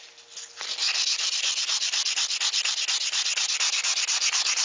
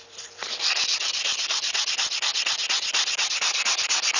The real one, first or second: first